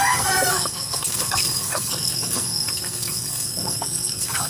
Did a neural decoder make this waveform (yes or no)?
yes